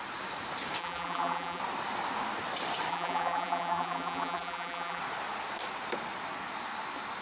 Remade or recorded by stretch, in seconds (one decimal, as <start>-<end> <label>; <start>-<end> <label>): 0.0-0.8 recorded; 0.8-1.6 remade; 1.6-2.9 recorded; 2.9-5.0 remade; 5.0-7.2 recorded